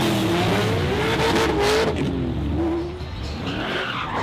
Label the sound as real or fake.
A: real